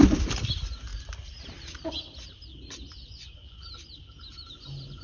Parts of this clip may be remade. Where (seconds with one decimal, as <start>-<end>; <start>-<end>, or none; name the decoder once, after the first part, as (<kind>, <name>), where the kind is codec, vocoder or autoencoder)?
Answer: 2.5-3.7 (vocoder, Vocos)